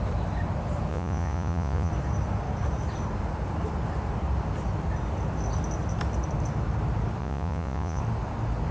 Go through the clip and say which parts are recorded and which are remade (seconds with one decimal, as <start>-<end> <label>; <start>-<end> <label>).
0.0-0.9 recorded; 0.9-1.9 remade; 1.9-7.2 recorded; 7.2-8.0 remade; 8.0-8.7 recorded